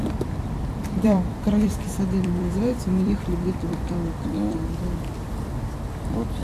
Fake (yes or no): yes